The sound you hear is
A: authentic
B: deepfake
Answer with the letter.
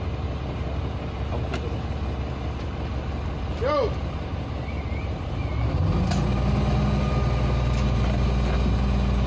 A